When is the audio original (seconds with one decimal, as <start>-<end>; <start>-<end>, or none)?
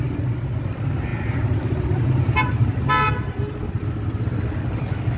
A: 0.0-5.2